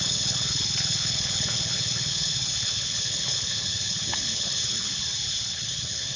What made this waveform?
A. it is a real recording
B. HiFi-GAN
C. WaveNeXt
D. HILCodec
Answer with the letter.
D